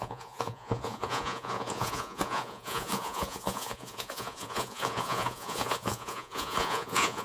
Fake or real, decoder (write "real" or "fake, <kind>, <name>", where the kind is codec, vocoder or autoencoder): fake, vocoder, Vocos